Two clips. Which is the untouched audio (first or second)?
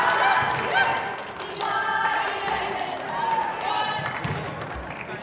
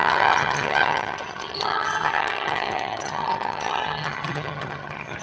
first